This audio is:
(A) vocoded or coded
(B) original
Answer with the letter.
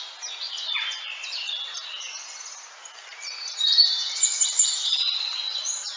B